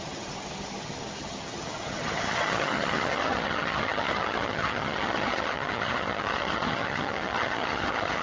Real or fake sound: fake